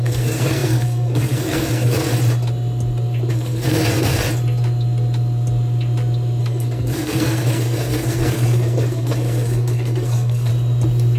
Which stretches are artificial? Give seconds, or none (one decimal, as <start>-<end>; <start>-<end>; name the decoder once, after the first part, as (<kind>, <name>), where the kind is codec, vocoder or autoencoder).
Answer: 0.0-2.1 (codec, SNAC); 3.3-4.2; 6.4-10.5